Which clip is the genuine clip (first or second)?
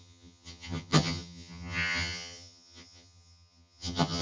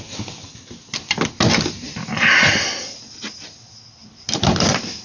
second